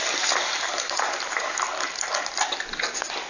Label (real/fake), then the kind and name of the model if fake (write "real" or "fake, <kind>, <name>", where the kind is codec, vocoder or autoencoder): real